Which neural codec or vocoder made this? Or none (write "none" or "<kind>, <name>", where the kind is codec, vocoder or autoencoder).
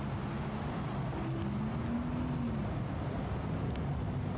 none